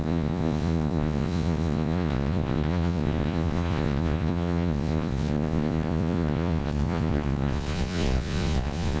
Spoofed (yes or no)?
yes